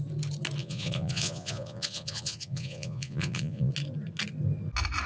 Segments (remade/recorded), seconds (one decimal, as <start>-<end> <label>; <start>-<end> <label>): 0.0-0.6 recorded; 0.6-3.7 remade; 3.7-5.1 recorded